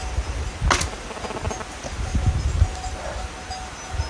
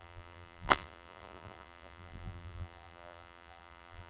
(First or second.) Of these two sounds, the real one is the first